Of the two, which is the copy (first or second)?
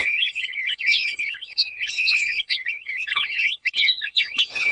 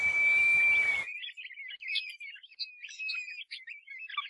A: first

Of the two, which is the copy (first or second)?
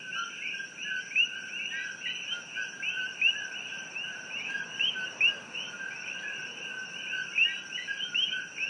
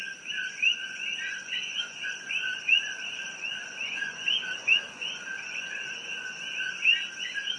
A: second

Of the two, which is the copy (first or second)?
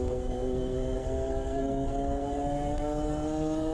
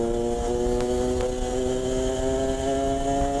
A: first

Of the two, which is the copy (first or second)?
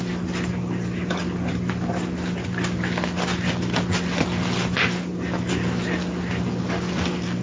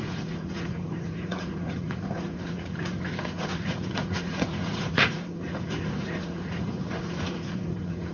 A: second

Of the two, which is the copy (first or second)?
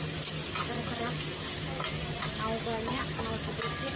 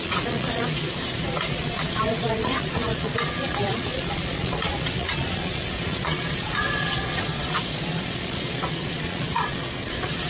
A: second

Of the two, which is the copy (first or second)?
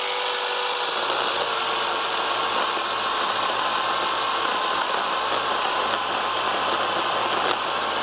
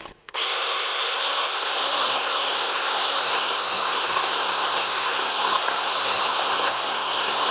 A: second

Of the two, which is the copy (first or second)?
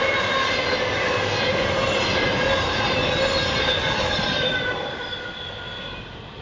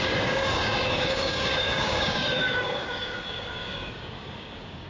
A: second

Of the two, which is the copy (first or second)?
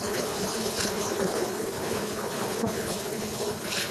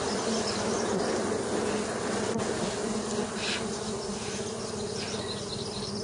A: first